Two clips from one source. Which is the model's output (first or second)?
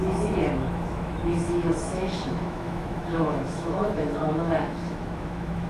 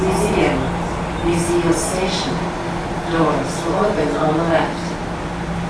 first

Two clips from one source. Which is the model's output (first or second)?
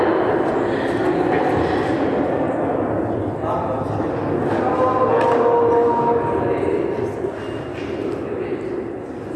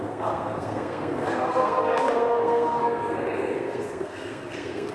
second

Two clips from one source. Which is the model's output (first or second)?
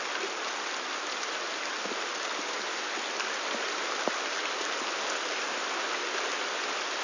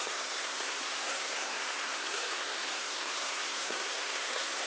second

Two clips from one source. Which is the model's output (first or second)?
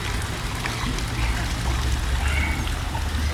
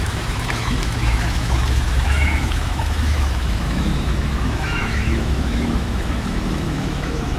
second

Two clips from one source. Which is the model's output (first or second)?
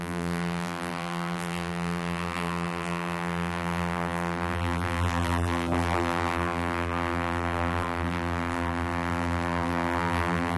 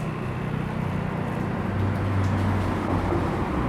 first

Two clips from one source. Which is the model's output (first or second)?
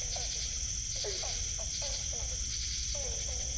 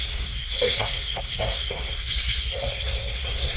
second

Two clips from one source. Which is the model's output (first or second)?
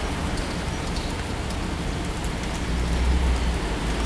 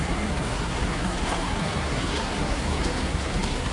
second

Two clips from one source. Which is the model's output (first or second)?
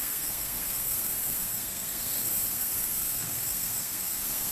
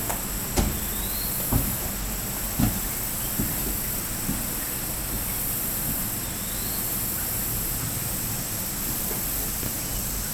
first